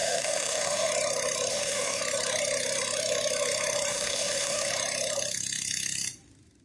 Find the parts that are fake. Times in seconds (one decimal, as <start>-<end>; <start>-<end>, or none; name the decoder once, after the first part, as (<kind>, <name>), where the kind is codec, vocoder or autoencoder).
0.0-0.9 (autoencoder, DAC-VAE); 1.5-2.0; 3.9-4.7